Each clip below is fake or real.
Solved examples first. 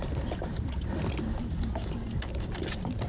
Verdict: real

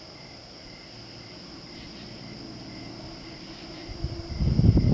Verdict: real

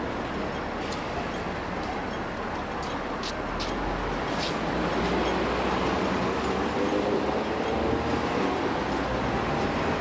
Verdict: real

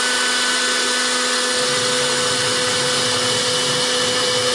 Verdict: real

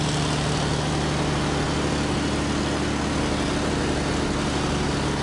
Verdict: real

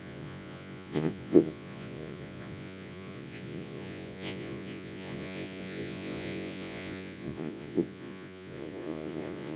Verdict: fake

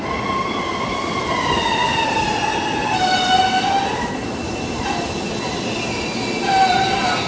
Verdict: real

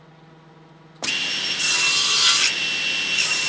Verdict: real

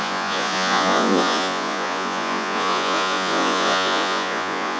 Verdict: fake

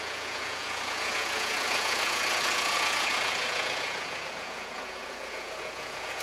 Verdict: fake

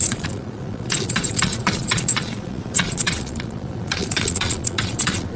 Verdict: fake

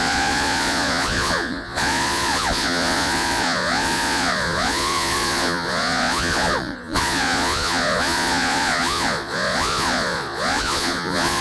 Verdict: fake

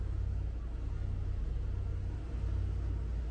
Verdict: real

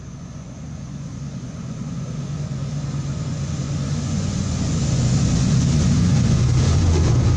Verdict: fake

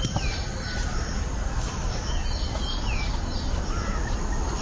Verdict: real